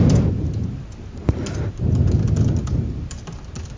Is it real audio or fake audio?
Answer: real